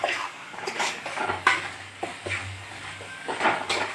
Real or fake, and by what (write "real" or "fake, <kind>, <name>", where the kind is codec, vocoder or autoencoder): fake, codec, DAC